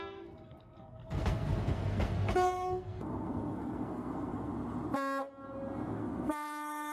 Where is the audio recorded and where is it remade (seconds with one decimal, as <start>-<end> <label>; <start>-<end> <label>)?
0.0-4.5 remade; 4.5-5.9 recorded; 5.9-6.9 remade